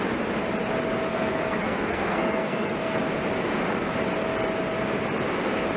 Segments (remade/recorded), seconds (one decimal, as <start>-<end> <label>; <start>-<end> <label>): 0.0-1.1 recorded; 1.1-3.0 remade; 3.0-5.8 recorded